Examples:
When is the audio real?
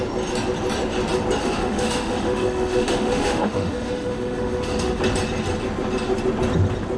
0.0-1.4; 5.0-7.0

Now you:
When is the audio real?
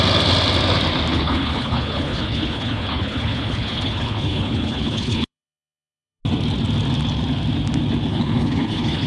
0.0-1.1; 6.2-8.1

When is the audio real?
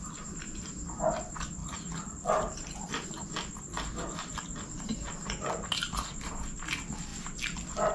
0.0-1.6; 3.1-7.1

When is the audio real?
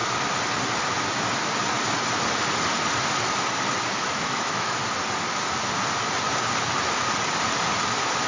0.0-4.0; 4.8-8.3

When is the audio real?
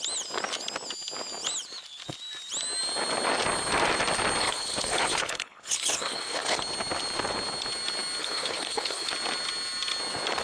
0.0-4.4; 6.6-8.2; 9.1-10.4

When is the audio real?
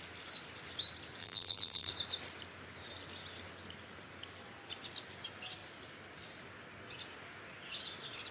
0.0-1.2; 1.9-8.3